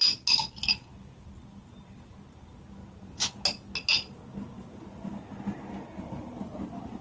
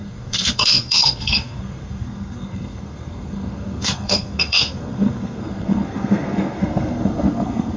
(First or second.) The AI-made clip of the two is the second